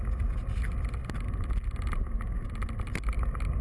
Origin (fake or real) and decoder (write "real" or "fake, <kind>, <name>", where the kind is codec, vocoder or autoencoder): real